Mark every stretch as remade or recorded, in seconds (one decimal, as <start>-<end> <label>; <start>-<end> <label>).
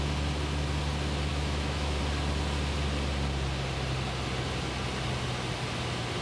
0.0-1.3 recorded; 1.3-2.0 remade; 2.0-6.2 recorded